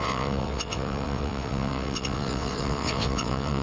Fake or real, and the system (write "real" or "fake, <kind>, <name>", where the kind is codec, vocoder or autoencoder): fake, vocoder, WaveNeXt